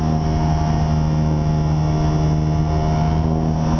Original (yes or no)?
yes